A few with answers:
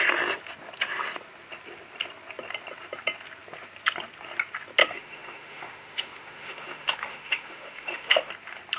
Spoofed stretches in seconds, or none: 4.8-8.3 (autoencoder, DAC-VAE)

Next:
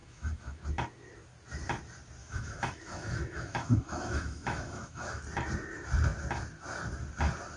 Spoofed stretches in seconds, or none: 0.0-0.6 (autoencoder, DAC-VAE); 2.2-5.2

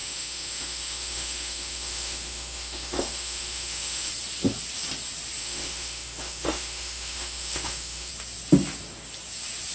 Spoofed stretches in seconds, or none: 0.0-4.1 (autoencoder, DAC-VAE); 5.4-8.1

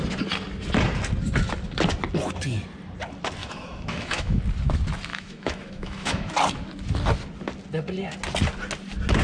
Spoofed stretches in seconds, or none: 3.4-4.4 (autoencoder, DAC-VAE); 5.1-6.3

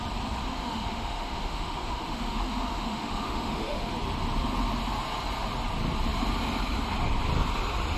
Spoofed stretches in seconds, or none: 0.4-3.9 (autoencoder, DAC-VAE)

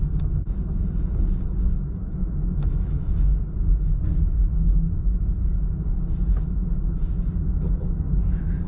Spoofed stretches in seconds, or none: 2.0-3.1 (autoencoder, DAC-VAE)

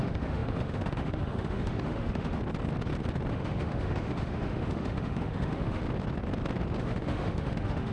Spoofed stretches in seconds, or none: 0.0-2.4 (autoencoder, DAC-VAE); 3.3-5.8; 6.8-7.9